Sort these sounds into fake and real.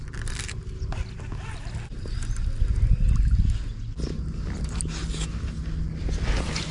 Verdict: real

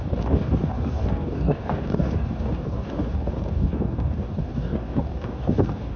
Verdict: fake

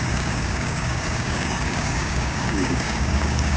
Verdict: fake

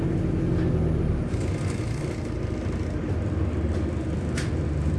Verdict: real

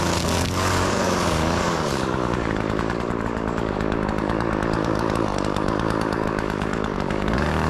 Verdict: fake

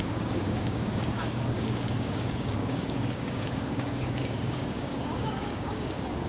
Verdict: fake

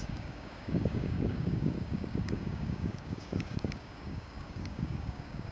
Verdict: fake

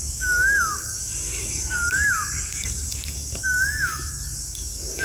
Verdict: fake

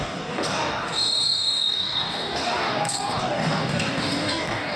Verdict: fake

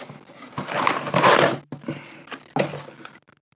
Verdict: real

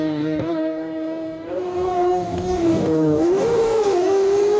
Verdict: fake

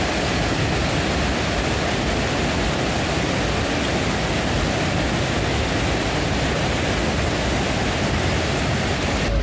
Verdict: real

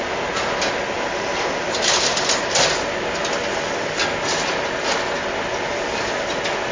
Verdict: real